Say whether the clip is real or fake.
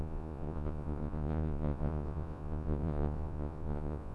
fake